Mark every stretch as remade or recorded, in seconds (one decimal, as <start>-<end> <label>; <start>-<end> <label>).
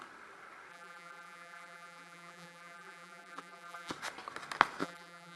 0.0-0.7 recorded; 0.7-3.9 remade; 3.9-4.8 recorded; 4.8-5.4 remade